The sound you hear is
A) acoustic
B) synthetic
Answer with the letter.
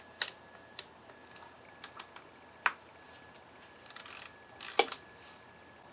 A